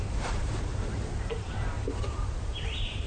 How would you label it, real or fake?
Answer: fake